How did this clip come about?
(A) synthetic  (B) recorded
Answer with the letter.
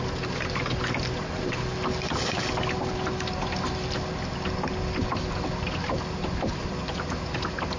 B